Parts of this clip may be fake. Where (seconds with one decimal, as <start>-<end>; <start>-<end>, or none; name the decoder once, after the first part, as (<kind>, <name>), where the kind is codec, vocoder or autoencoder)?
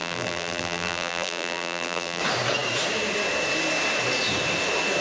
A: 0.0-2.2 (vocoder, BigVGAN v2)